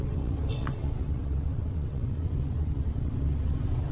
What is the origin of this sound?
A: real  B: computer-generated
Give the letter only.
B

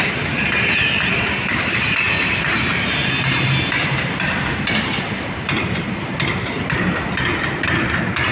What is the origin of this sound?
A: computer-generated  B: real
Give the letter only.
A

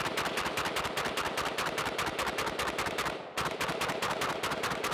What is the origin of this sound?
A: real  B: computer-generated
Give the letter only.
A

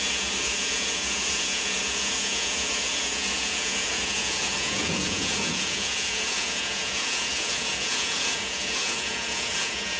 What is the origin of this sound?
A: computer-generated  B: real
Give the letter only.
A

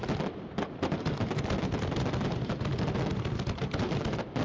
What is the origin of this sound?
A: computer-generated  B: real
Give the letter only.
B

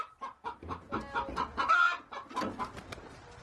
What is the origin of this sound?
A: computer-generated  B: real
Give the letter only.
B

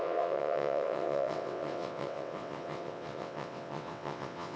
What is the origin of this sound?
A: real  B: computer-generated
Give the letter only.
B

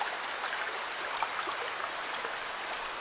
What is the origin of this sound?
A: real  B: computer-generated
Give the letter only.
A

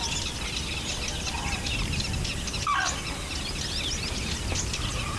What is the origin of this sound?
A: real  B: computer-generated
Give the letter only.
A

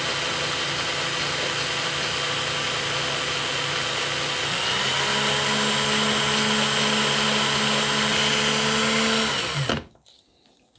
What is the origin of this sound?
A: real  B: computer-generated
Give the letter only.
A